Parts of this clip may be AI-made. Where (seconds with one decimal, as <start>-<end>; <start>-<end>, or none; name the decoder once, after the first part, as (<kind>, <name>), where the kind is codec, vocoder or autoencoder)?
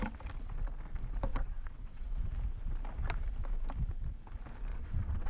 1.3-2.3 (vocoder, WaveNeXt); 4.7-5.3